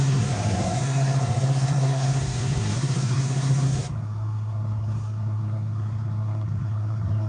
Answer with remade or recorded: remade